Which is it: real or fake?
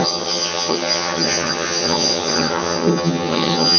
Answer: fake